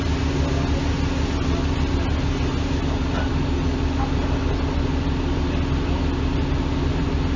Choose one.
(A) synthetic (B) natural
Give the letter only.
B